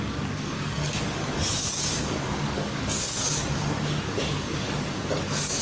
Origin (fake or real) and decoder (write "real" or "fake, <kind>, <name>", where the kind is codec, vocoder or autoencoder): fake, codec, DAC